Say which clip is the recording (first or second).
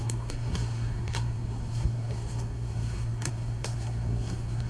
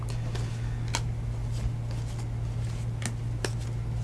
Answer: second